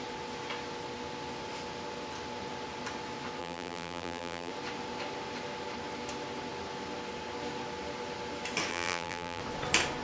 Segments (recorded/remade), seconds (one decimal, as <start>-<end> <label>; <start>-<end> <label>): 0.0-3.4 recorded; 3.4-4.5 remade; 4.5-8.7 recorded; 8.7-9.4 remade; 9.4-10.0 recorded